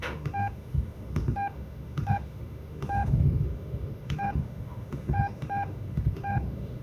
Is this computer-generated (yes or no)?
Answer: yes